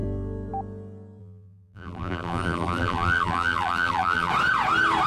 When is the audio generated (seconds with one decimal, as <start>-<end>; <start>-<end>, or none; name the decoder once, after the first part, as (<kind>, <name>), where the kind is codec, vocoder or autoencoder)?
1.2-4.3 (vocoder, BigVGAN v2)